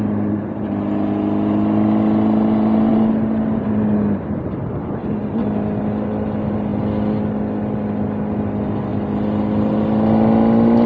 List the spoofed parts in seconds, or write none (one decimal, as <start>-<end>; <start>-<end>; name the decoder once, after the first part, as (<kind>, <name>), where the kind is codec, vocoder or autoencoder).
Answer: none